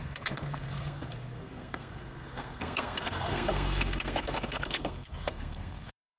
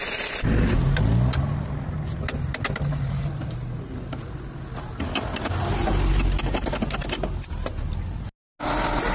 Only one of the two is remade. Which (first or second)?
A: first